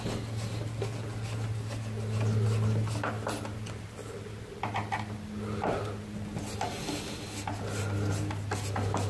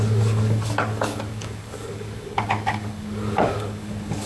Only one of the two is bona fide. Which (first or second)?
first